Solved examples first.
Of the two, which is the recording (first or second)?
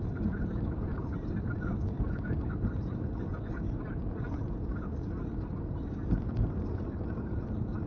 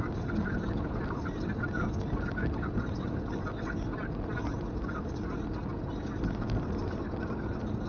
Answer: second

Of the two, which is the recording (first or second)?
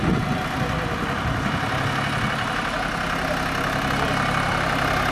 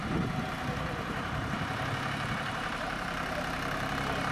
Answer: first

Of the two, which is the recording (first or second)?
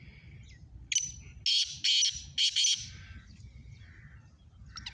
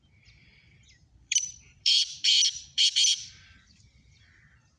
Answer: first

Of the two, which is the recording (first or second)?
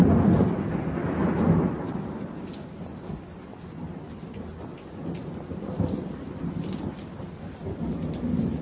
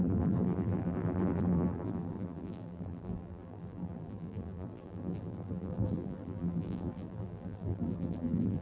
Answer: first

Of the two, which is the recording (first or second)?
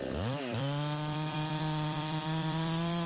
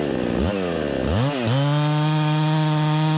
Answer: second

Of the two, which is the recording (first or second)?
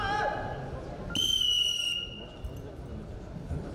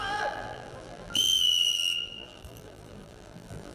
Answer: first